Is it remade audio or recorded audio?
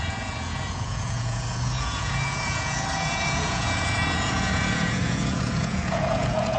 remade